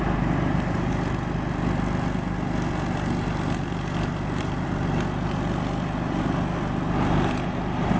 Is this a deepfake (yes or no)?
no